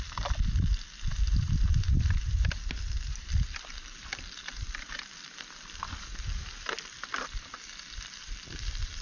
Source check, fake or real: fake